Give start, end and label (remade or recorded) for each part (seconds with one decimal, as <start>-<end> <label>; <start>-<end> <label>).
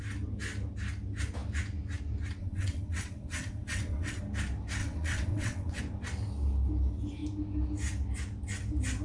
0.0-2.4 recorded; 2.4-4.2 remade; 4.2-4.8 recorded; 4.8-5.8 remade; 5.8-9.0 recorded